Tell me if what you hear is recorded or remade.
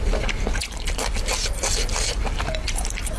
recorded